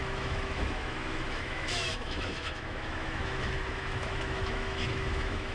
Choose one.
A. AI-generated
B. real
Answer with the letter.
A